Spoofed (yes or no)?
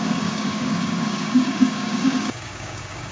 yes